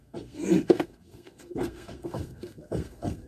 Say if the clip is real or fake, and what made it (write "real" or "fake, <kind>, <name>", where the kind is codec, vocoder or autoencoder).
fake, codec, SNAC